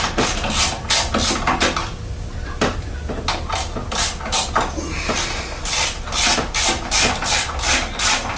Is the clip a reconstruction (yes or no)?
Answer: no